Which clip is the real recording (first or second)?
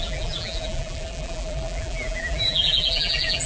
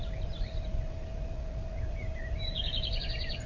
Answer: second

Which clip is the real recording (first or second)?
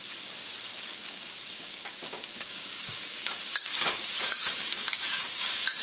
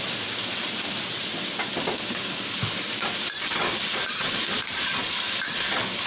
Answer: second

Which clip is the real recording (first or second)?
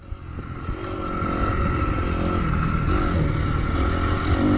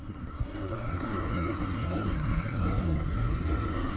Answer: first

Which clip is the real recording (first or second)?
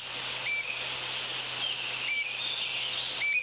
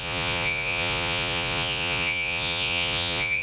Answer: first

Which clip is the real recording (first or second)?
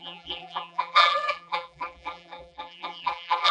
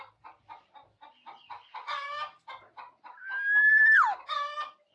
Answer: second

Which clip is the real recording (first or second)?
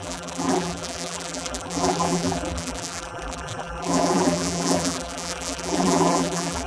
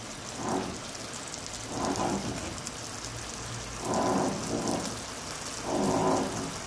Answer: second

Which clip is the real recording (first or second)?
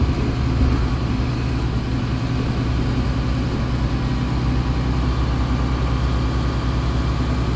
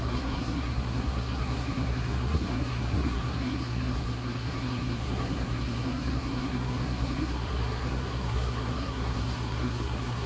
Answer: first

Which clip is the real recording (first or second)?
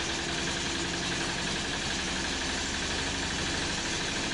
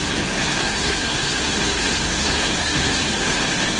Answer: first